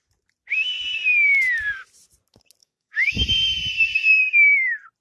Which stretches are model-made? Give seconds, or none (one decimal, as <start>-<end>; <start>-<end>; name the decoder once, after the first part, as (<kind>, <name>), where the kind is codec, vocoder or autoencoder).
2.6-3.1 (codec, DAC)